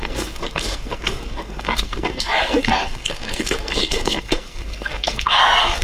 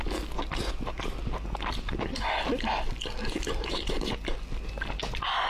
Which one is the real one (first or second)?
second